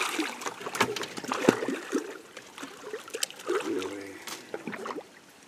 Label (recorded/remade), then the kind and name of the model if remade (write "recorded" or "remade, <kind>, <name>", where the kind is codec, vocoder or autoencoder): recorded